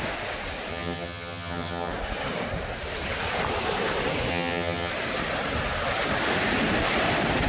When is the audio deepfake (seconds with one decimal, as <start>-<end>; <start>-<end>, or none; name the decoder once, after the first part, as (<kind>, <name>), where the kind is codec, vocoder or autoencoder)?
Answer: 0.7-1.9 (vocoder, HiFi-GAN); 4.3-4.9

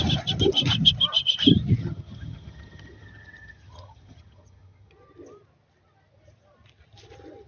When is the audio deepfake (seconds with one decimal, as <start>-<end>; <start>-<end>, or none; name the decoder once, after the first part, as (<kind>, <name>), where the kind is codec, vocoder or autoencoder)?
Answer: 1.8-4.9 (vocoder, HiFi-GAN)

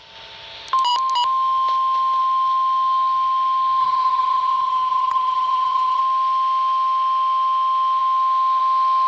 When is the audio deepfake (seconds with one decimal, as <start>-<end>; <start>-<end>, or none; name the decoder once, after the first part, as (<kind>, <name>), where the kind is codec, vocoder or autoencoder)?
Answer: 3.8-6.0 (vocoder, HiFi-GAN)

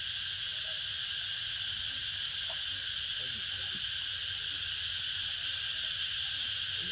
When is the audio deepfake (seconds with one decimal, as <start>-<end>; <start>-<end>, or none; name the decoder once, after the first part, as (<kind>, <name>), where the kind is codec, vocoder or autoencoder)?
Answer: none

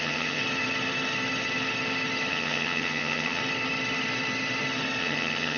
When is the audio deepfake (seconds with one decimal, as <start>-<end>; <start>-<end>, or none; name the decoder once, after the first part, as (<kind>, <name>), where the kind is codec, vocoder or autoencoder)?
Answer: 0.0-0.4 (vocoder, HiFi-GAN); 2.3-3.4; 5.0-5.6